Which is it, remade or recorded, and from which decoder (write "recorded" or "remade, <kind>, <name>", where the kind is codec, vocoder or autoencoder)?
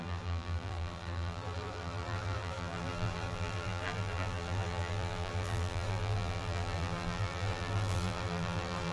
remade, vocoder, BigVGAN v2